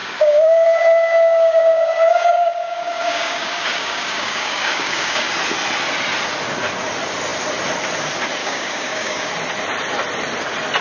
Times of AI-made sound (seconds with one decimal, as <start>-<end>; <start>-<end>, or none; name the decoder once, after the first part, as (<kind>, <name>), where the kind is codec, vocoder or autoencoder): 0.0-5.3 (codec, DAC); 8.4-9.3